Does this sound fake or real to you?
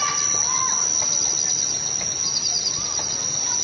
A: real